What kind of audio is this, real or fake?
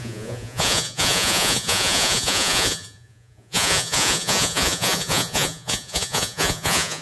fake